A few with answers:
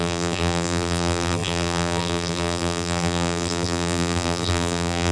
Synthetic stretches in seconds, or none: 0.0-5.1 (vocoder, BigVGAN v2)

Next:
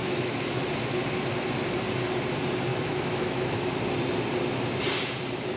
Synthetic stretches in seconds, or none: 0.0-0.6 (autoencoder, DAC-VAE); 2.7-3.6

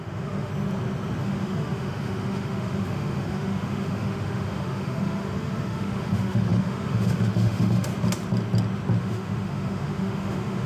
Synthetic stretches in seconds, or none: 0.0-0.5 (autoencoder, DAC-VAE); 1.2-7.9; 9.0-10.7

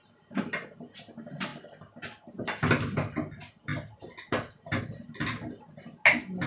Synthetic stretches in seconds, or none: none

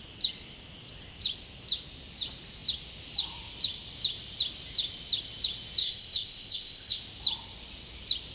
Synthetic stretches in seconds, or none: 5.8-7.0 (codec, ZipCodec)

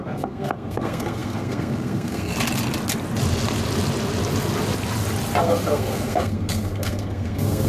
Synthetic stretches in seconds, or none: 0.0-2.3 (codec, SNAC); 5.4-7.7

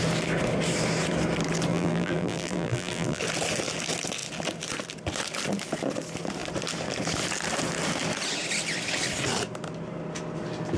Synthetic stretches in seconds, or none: 1.7-3.2 (vocoder, BigVGAN v2)